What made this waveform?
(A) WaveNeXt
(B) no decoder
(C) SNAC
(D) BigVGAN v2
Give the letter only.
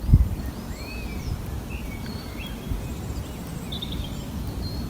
B